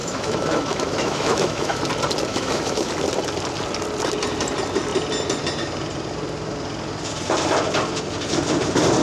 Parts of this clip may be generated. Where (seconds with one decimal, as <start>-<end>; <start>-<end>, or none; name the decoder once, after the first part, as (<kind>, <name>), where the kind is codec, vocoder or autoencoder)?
0.0-1.8 (autoencoder, DAC-VAE); 2.3-2.9